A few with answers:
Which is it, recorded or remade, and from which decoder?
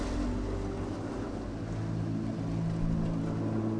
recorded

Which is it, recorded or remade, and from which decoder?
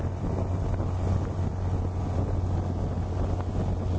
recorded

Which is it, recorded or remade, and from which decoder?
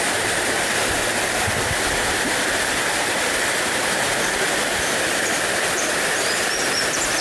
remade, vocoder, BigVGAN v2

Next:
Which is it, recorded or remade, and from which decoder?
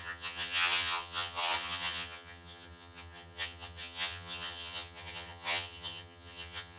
remade, vocoder, HiFi-GAN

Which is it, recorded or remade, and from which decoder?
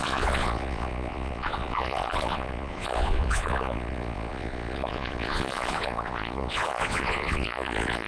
remade, vocoder, Vocos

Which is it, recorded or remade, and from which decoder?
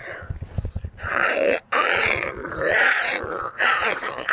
remade, vocoder, Vocos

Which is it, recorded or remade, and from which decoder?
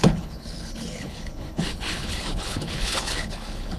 remade, codec, HILCodec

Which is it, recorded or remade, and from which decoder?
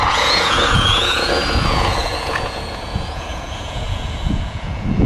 remade, vocoder, Vocos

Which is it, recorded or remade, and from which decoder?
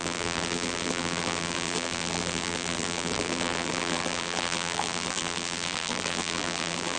remade, vocoder, BigVGAN v2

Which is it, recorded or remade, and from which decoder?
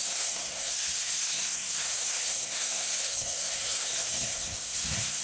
remade, codec, SNAC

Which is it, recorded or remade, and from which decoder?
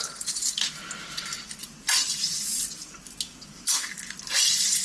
recorded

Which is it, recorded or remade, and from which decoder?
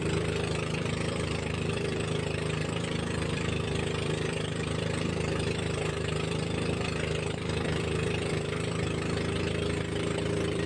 remade, vocoder, BigVGAN v2